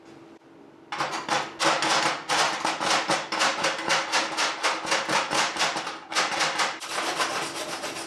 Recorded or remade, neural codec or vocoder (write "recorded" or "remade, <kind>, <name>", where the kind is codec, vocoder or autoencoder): recorded